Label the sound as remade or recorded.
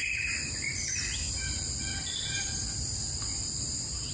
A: recorded